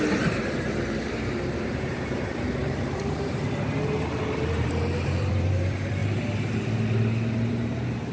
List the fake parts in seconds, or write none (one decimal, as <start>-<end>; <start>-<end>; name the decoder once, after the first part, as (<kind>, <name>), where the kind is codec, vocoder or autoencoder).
0.0-6.0 (vocoder, BigVGAN v2); 7.5-8.1